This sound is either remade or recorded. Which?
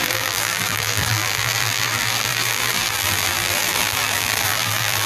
remade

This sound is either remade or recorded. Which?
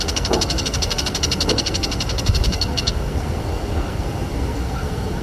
remade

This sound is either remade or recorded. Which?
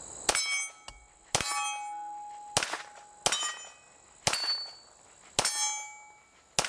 recorded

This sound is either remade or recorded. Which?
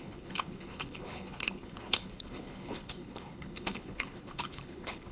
remade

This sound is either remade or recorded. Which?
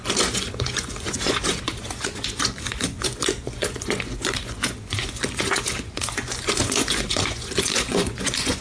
remade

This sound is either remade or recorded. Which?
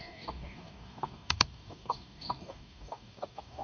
remade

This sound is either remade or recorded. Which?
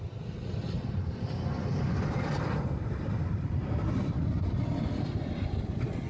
recorded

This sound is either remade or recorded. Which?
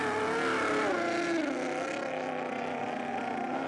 recorded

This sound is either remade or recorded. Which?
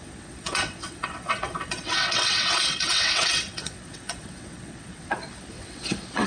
remade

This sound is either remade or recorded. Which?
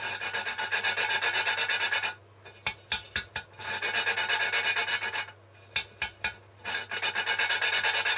recorded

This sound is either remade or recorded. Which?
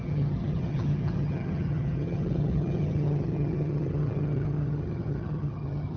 remade